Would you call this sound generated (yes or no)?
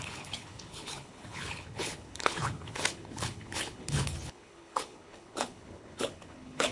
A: yes